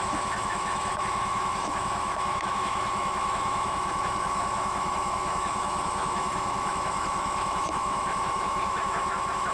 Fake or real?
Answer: fake